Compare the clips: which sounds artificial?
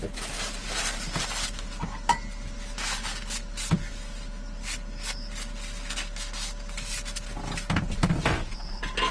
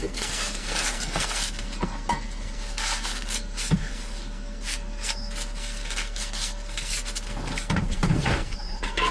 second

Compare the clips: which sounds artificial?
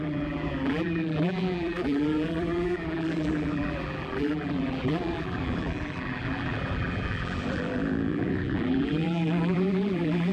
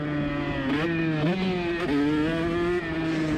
first